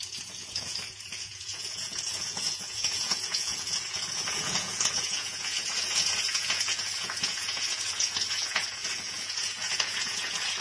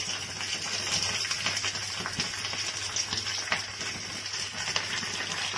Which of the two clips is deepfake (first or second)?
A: first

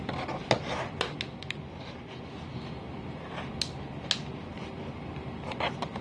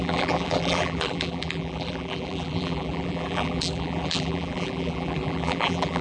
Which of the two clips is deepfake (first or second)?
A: second